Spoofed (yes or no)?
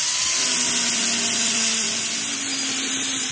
no